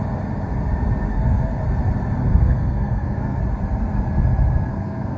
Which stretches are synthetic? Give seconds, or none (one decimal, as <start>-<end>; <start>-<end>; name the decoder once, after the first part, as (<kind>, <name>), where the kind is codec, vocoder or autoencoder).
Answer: 1.1-1.6 (codec, SNAC); 2.3-3.4; 4.7-5.2